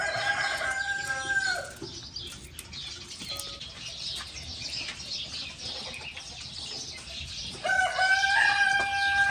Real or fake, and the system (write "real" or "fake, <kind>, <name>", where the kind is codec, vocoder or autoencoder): real